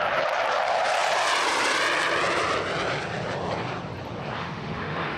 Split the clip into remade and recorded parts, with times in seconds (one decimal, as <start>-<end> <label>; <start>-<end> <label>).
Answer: 0.0-4.4 recorded; 4.4-5.2 remade